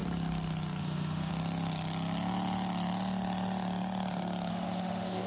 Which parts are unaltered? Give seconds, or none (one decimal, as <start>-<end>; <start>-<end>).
0.0-0.8; 1.3-4.5